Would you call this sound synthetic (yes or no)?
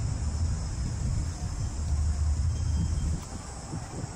no